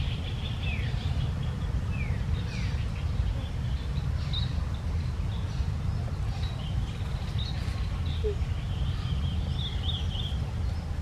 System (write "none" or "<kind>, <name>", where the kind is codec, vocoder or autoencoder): none